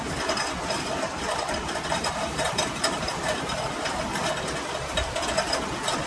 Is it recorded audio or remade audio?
remade